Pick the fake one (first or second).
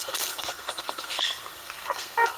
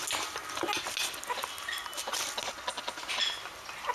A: first